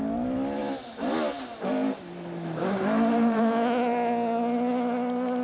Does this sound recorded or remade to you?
recorded